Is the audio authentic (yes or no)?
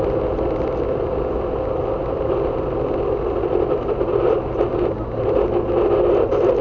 yes